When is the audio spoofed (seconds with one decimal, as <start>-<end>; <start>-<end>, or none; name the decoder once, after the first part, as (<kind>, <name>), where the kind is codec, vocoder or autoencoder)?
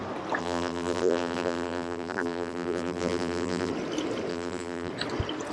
0.4-3.7 (vocoder, BigVGAN v2); 4.3-4.9